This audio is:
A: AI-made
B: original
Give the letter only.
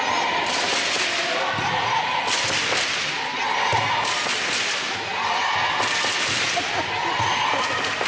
B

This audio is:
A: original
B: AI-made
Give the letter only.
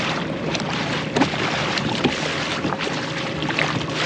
B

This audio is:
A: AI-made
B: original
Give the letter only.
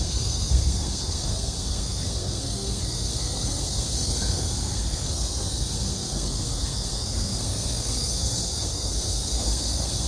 A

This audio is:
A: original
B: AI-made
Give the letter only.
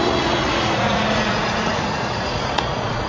B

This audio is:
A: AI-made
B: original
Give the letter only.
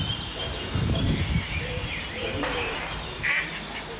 A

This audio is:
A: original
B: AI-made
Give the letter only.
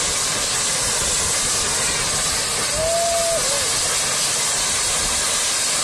A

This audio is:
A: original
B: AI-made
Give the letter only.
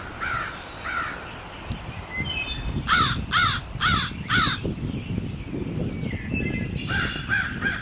A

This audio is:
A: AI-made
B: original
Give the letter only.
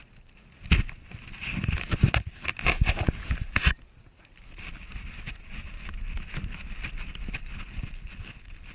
B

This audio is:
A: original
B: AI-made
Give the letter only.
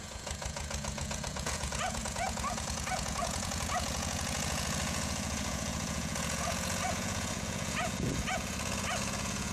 B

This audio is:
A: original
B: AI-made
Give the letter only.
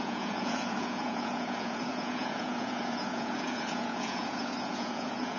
B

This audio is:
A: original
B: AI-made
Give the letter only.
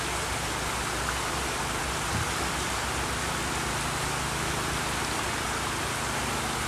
A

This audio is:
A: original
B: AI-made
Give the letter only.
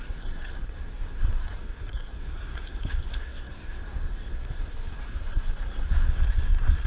B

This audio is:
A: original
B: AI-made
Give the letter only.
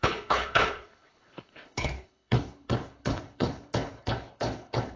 B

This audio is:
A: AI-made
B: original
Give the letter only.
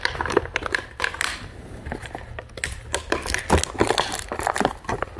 B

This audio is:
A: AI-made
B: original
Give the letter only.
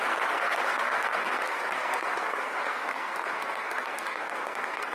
A